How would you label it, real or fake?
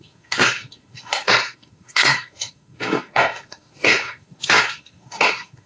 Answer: fake